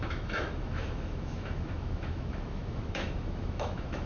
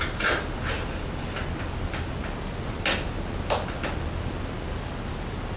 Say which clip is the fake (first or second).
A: first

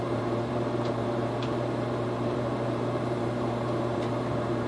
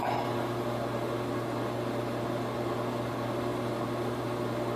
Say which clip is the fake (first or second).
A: first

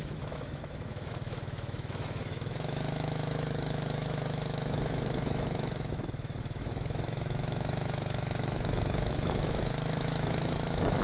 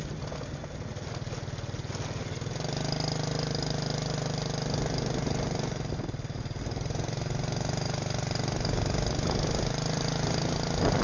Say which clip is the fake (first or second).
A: first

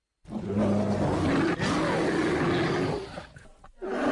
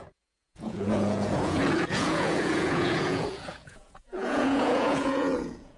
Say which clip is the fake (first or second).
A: second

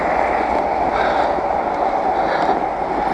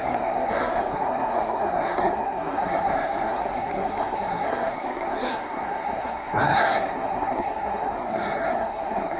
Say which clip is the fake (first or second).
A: second